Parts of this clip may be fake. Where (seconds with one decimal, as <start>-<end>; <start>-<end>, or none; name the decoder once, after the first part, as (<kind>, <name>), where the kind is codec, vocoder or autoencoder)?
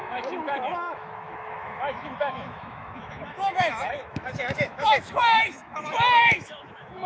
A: 0.0-7.1 (autoencoder, DAC-VAE)